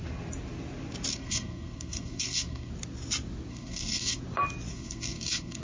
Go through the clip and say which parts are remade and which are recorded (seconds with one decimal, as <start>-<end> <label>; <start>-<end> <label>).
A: 0.0-1.1 recorded; 1.1-2.7 remade; 2.7-3.5 recorded; 3.5-4.2 remade; 4.2-4.7 recorded; 4.7-5.6 remade